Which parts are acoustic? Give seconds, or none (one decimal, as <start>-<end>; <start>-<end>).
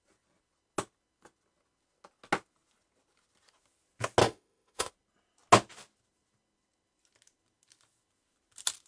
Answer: 0.0-4.2; 4.9-8.9